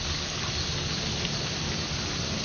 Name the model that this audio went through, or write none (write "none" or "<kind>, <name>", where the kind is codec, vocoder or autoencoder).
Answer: none